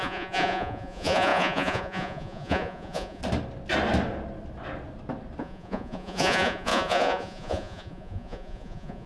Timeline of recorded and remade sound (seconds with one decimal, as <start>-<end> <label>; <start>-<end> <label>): 0.0-3.2 remade; 3.2-5.4 recorded; 5.4-9.1 remade